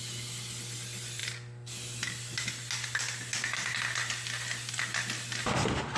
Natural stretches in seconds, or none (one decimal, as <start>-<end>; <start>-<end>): 0.0-6.0